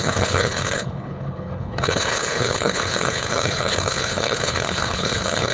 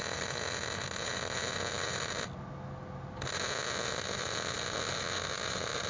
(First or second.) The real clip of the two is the second